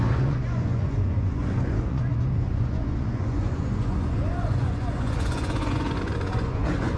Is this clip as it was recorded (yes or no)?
no